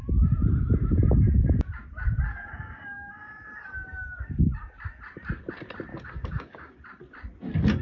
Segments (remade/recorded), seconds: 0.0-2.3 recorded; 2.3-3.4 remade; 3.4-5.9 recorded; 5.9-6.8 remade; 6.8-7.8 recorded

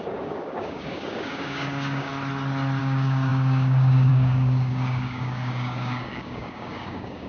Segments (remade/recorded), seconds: 0.0-2.1 remade; 2.1-2.8 recorded; 2.8-7.3 remade

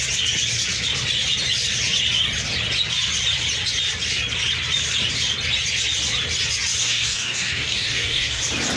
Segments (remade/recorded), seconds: 0.0-6.8 recorded; 6.8-8.4 remade; 8.4-8.8 recorded

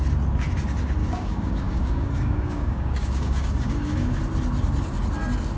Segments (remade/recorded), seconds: 0.0-1.0 recorded; 1.0-4.2 remade; 4.2-5.6 recorded

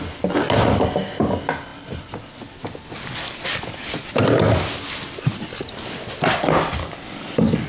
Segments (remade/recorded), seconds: 0.0-6.8 recorded; 6.8-7.7 remade

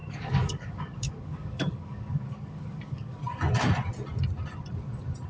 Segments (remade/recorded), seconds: 0.0-3.2 remade; 3.2-5.3 recorded

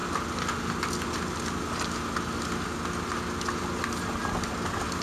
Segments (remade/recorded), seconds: 0.0-5.0 recorded

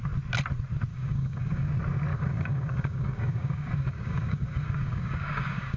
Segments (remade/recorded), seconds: 0.0-0.9 recorded; 0.9-1.7 remade; 1.7-2.1 recorded; 2.1-5.8 remade